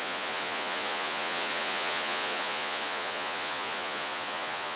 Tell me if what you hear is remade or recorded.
remade